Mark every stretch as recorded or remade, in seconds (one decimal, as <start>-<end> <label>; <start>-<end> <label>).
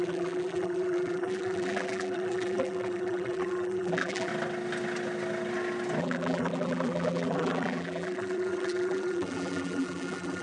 0.0-4.3 remade; 4.3-6.0 recorded; 6.0-10.4 remade